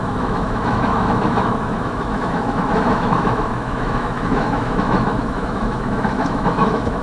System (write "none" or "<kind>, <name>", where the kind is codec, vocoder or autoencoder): autoencoder, DAC-VAE